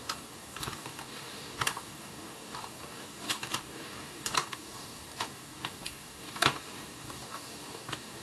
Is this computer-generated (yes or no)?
yes